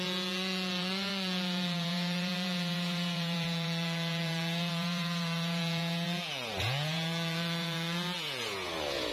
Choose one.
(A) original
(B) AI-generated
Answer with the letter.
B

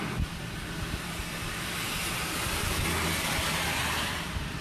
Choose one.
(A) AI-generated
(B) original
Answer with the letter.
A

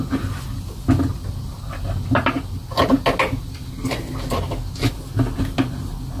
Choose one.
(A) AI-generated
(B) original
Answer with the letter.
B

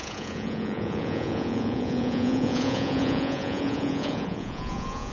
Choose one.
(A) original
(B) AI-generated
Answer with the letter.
B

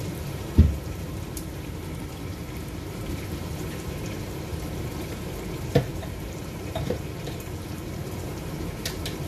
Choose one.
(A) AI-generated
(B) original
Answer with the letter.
A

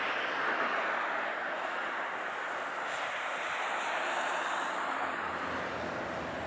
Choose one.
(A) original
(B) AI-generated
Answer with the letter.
A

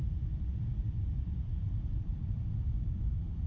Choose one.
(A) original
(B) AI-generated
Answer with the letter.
B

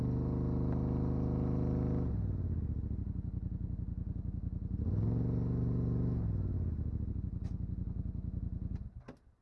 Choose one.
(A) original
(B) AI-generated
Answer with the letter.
A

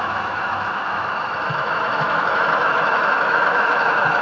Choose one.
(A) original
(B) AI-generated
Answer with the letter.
B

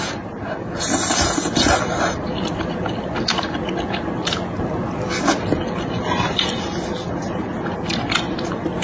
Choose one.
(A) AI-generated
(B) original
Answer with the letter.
B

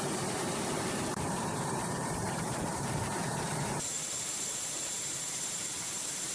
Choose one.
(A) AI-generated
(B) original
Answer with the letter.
A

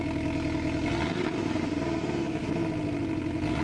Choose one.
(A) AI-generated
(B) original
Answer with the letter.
B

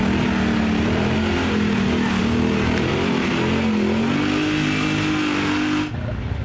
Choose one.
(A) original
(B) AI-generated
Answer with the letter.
A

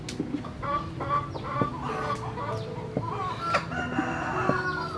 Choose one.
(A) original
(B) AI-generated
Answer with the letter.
A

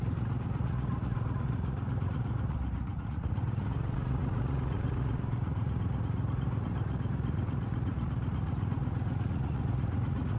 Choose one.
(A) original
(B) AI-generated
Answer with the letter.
B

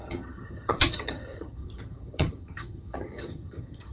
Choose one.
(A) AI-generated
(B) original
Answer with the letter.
A